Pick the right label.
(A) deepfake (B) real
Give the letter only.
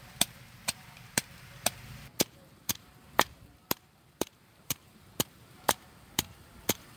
A